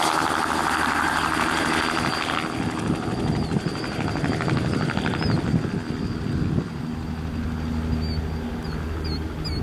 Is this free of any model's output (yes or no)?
yes